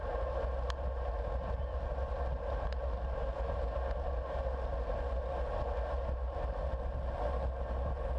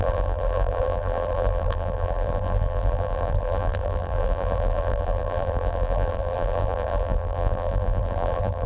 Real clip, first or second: first